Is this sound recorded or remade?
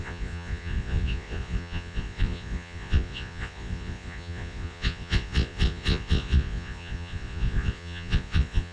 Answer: remade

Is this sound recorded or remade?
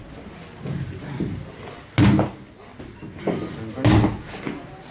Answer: recorded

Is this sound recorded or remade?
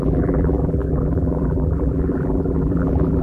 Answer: remade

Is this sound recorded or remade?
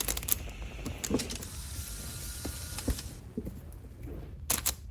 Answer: recorded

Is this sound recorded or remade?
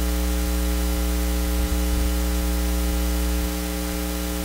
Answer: recorded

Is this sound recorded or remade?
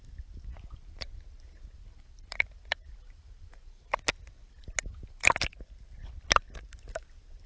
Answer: recorded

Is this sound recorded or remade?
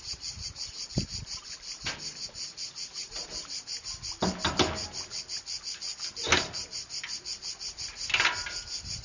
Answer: recorded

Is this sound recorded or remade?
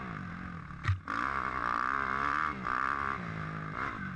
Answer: recorded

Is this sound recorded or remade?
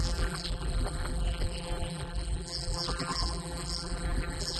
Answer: remade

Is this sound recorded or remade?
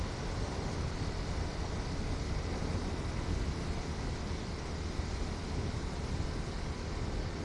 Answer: recorded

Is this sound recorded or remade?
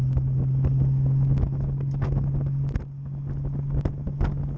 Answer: recorded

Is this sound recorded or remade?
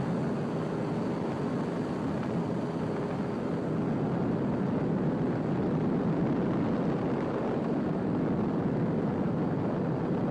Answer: recorded